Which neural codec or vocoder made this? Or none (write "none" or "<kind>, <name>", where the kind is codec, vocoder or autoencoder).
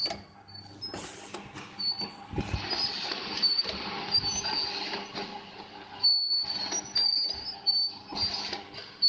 none